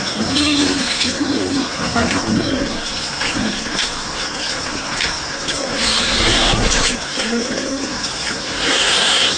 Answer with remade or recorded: remade